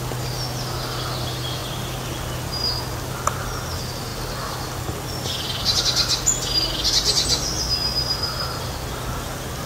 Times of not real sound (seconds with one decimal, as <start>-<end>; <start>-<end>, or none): none